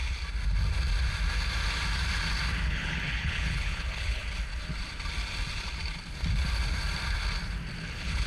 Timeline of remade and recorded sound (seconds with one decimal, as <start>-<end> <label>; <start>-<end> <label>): 0.0-2.7 recorded; 2.7-4.2 remade; 4.2-7.9 recorded; 7.9-8.3 remade